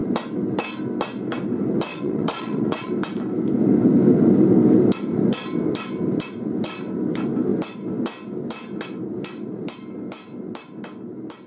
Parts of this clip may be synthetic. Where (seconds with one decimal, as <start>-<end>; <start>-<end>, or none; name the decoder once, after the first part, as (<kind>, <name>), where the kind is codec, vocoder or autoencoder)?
1.9-2.9 (vocoder, Vocos)